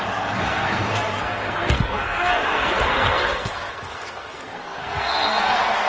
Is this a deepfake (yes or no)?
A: yes